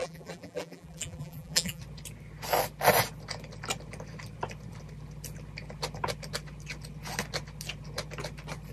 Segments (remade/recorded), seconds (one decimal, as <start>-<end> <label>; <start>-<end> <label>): 0.0-1.8 remade; 1.8-8.7 recorded